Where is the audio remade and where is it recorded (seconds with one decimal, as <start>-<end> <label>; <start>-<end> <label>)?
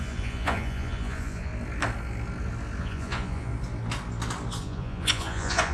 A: 0.0-1.5 remade; 1.5-2.8 recorded; 2.8-3.5 remade; 3.5-4.6 recorded; 4.6-5.7 remade